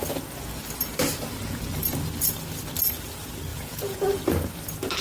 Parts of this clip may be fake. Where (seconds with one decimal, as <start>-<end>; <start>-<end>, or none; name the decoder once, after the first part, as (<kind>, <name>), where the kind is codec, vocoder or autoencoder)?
3.5-4.6 (vocoder, Vocos)